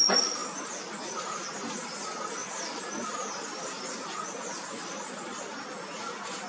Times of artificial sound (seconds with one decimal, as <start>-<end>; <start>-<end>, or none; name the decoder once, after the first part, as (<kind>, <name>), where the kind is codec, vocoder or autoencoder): none